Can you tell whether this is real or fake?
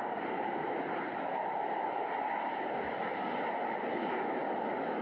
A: real